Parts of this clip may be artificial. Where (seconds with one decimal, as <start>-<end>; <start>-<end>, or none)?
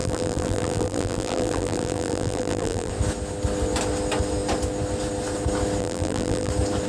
0.0-2.9; 5.8-6.5